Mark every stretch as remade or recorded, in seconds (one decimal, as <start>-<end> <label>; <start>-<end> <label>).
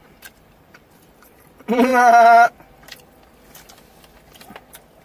0.0-1.9 remade; 1.9-5.0 recorded